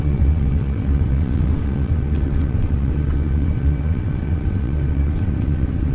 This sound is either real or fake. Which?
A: fake